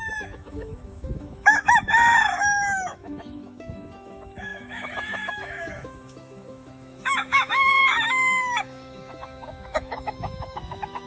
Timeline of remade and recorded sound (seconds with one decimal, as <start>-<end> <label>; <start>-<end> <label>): 0.0-11.1 remade